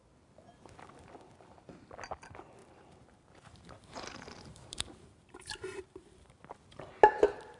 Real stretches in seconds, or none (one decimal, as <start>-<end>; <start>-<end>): 0.0-2.6; 6.4-7.6